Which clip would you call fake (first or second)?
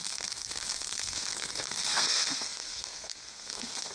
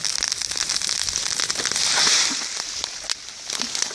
first